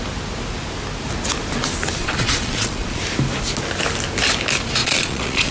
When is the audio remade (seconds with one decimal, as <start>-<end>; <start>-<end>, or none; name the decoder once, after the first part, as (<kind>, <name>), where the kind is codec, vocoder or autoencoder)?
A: 2.0-3.0 (vocoder, Vocos); 4.8-5.5